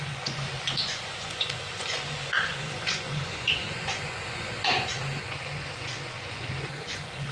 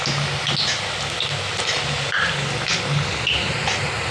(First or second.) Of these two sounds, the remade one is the first